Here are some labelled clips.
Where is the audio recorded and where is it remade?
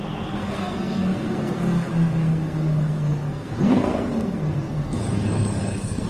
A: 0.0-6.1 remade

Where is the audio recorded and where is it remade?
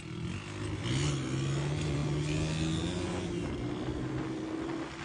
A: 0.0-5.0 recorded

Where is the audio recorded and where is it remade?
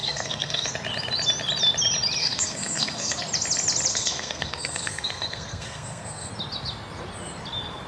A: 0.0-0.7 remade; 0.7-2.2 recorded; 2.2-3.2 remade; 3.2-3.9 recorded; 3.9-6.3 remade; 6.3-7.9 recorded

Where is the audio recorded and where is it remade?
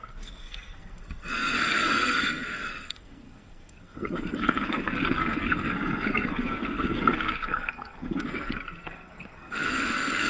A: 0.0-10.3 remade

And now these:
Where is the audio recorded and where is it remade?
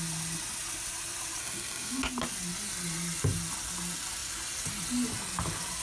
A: 0.0-1.4 recorded; 1.4-2.0 remade; 2.0-5.8 recorded